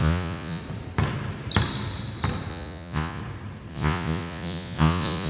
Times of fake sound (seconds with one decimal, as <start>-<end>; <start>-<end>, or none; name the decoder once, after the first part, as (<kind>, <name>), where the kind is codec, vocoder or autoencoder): 0.0-0.6 (vocoder, Vocos); 2.5-3.2; 3.7-5.3